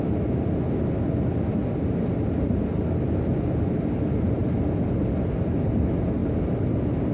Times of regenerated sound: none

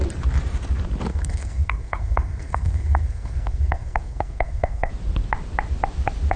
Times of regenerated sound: 1.1-4.9 (codec, SNAC)

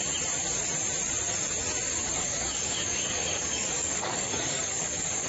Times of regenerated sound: 1.9-5.3 (codec, DAC)

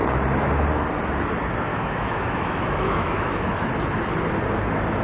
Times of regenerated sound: 1.7-3.7 (autoencoder, DAC-VAE)

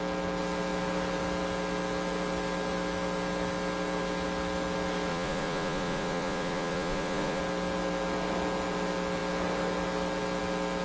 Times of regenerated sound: 5.1-7.4 (vocoder, Vocos)

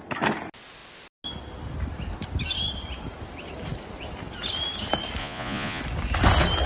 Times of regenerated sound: 5.2-5.8 (vocoder, Vocos)

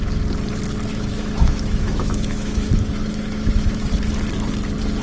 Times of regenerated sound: 0.9-3.9 (autoencoder, DAC-VAE)